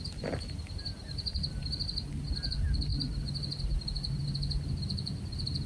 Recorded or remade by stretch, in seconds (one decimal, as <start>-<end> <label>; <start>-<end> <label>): 0.0-5.7 recorded